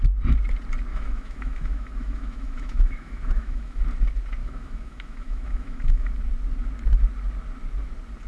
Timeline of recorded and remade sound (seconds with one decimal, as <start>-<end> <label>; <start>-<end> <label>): 0.0-0.9 recorded; 0.9-3.8 remade; 3.8-4.4 recorded; 4.4-6.1 remade; 6.1-8.3 recorded